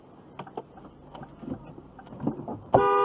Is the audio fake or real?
real